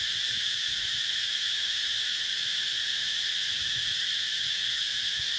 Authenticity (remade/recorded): remade